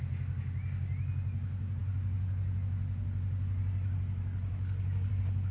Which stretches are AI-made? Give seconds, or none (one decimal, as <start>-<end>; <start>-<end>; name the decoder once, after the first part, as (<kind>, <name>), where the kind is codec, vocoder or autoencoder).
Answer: none